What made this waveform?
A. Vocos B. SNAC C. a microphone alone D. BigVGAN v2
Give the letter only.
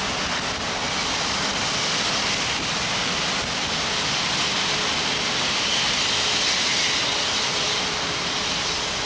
C